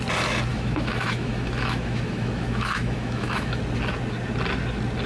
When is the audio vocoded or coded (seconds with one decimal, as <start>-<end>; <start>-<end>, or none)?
0.5-3.6